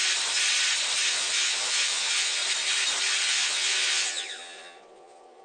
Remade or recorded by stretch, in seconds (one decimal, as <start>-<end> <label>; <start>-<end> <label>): 0.0-1.1 recorded; 1.1-2.4 remade; 2.4-3.3 recorded; 3.3-5.4 remade